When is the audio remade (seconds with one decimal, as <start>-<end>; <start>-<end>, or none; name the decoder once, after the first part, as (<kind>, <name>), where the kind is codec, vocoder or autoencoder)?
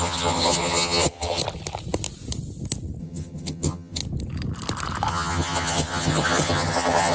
0.0-1.4 (vocoder, HiFi-GAN); 3.0-4.0; 5.1-7.1